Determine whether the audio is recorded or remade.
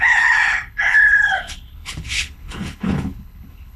remade